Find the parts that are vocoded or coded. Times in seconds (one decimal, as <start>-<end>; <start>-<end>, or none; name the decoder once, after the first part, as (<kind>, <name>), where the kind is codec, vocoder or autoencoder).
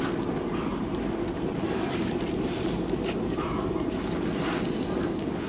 0.7-3.7 (vocoder, BigVGAN v2)